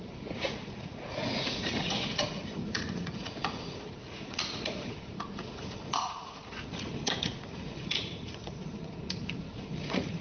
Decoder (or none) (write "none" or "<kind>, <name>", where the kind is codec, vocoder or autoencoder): vocoder, Vocos